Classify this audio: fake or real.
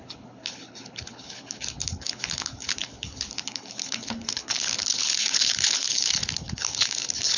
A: fake